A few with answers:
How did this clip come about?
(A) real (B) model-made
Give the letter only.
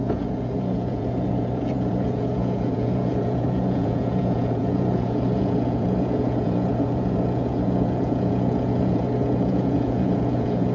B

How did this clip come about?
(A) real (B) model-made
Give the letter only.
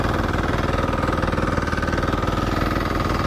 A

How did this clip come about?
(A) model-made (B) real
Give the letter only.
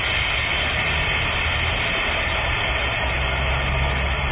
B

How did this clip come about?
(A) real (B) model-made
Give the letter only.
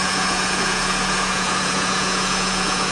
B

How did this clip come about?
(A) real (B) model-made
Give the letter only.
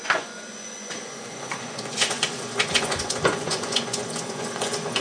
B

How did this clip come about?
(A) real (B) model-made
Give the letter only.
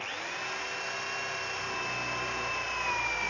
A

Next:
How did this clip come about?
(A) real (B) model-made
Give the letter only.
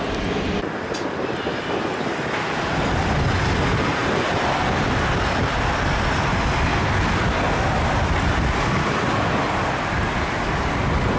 A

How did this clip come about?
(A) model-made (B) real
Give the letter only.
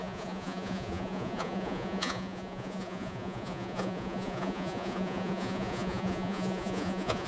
A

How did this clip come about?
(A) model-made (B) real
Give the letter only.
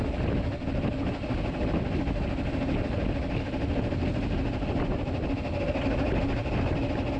B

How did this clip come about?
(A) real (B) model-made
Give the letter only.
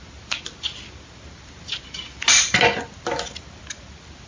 A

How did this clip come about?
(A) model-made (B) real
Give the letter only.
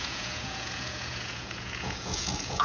A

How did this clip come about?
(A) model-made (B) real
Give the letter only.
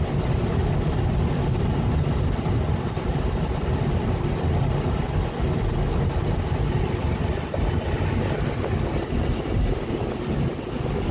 B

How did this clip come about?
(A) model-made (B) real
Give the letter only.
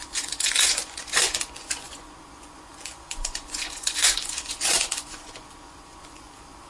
A